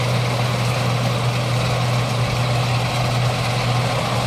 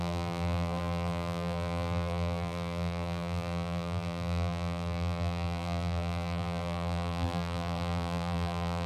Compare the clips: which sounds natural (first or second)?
first